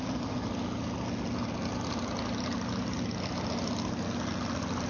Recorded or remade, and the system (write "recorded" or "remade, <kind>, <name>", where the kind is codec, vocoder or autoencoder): recorded